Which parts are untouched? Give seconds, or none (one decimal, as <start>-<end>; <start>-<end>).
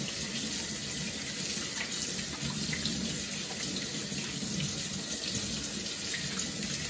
0.0-3.9; 5.3-6.9